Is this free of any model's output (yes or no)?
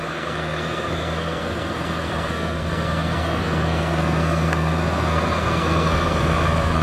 no